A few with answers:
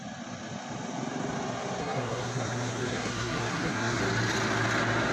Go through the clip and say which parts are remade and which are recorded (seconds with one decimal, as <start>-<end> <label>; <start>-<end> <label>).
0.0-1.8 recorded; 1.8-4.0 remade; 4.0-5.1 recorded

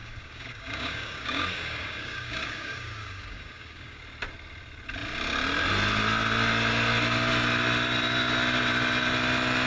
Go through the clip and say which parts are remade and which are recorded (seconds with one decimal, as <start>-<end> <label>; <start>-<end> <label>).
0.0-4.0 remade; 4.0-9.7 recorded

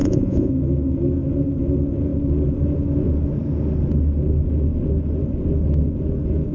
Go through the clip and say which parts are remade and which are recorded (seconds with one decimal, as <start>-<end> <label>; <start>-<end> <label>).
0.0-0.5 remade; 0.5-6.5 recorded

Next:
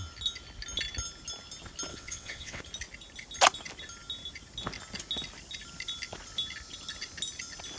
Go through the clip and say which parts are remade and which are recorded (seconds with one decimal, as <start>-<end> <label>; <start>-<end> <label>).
0.0-1.9 recorded; 1.9-2.6 remade; 2.6-7.8 recorded

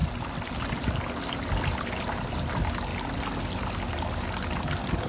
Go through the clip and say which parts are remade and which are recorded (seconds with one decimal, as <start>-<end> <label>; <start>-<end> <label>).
0.0-5.1 recorded

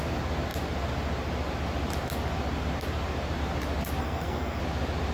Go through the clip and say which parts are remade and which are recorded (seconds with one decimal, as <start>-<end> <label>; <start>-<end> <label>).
0.0-4.0 recorded; 4.0-4.6 remade; 4.6-5.1 recorded